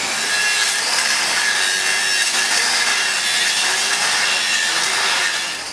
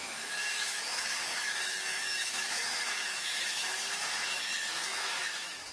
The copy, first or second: second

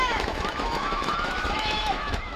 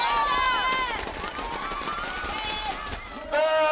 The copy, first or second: first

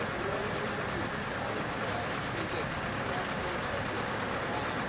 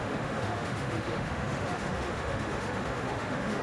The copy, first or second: second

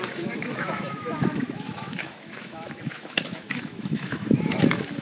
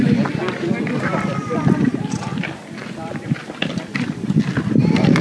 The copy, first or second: first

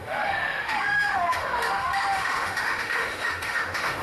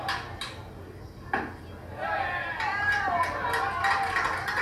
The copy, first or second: first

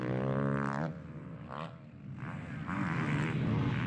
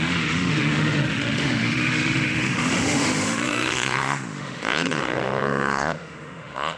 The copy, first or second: second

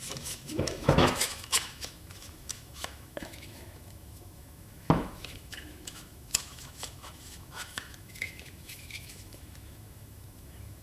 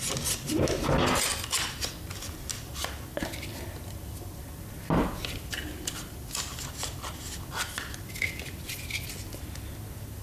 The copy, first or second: first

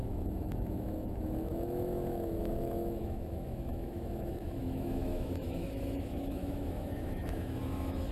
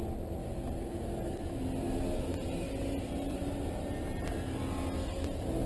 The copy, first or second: first